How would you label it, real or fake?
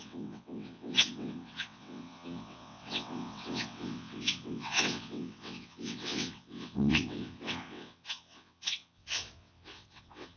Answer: fake